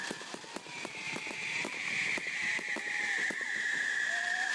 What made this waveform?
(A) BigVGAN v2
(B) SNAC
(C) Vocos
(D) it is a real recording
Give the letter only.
A